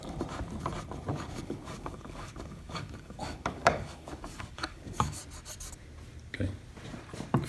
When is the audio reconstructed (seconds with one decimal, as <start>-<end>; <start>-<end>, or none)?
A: 1.1-5.2